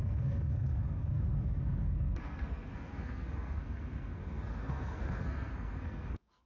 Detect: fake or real fake